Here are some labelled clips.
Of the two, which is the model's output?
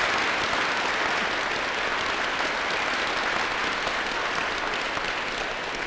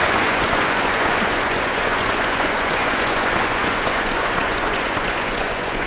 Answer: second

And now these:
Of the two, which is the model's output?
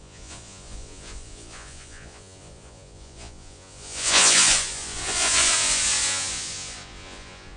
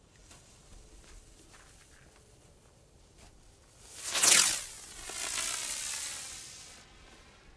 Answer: first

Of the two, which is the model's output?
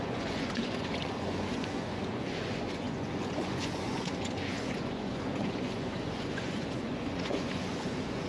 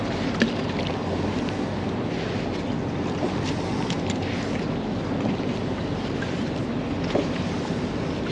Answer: first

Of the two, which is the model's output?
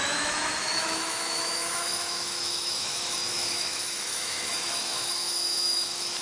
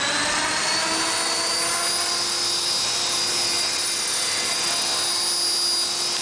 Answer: first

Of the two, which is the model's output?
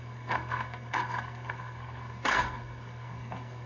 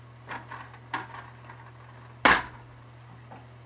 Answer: first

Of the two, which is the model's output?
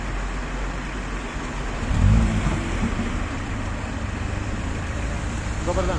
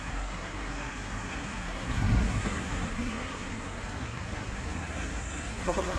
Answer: second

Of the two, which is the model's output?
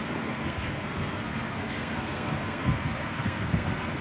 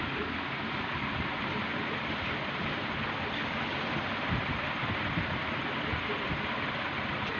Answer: first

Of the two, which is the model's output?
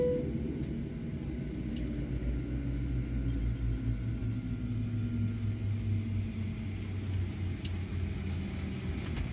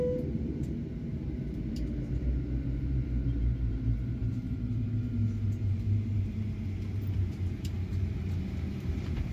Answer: second